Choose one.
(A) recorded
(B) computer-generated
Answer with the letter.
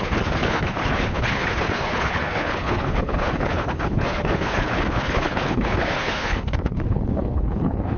B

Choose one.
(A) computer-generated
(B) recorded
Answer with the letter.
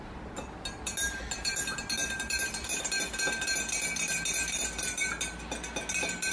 B